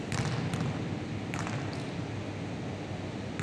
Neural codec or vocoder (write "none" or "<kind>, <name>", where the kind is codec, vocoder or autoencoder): none